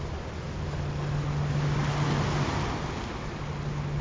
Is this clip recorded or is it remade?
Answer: recorded